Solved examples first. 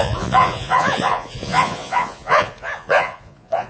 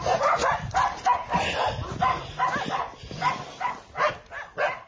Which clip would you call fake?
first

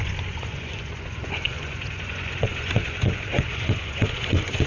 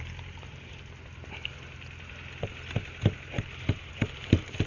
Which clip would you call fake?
first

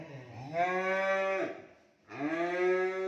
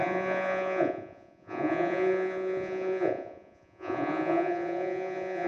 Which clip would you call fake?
second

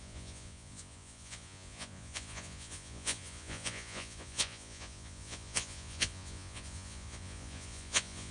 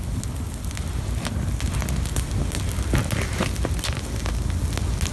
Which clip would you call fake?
first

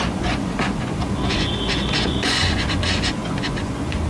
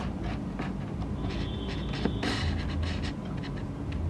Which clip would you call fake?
first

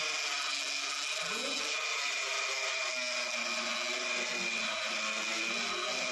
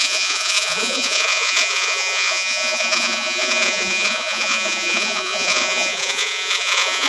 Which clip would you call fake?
second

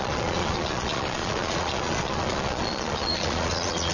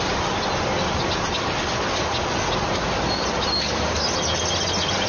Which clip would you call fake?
first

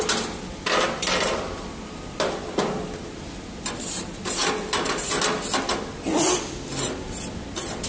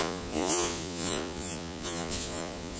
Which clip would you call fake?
second